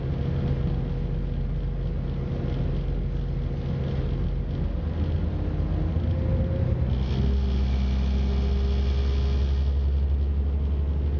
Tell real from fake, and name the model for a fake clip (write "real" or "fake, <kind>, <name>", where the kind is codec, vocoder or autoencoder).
real